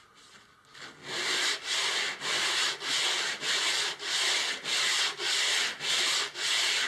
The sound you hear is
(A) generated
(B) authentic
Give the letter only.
B